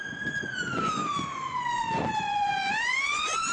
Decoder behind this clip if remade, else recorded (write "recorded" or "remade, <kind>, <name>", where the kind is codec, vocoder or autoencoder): remade, vocoder, Vocos